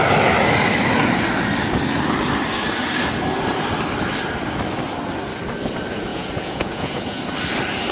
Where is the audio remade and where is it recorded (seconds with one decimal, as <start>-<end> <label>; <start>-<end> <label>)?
0.0-6.1 recorded; 6.1-7.2 remade; 7.2-7.9 recorded